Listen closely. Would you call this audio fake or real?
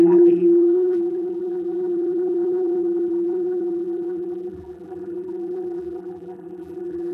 fake